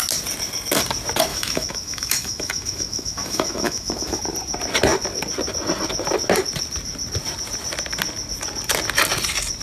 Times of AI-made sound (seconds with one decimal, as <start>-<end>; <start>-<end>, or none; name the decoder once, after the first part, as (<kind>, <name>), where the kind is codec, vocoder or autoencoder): 1.3-4.2 (autoencoder, DAC-VAE)